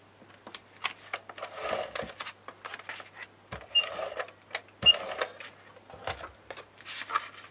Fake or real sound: real